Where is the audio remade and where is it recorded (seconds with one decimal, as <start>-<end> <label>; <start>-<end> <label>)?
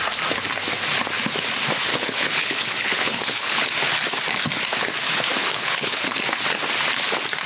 0.0-1.9 recorded; 1.9-3.7 remade; 3.7-5.4 recorded; 5.4-6.2 remade; 6.2-7.5 recorded